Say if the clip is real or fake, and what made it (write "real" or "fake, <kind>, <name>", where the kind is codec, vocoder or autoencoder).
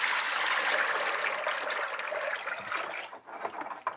real